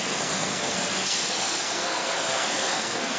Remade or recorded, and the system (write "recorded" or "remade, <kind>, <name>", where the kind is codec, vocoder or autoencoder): remade, codec, SNAC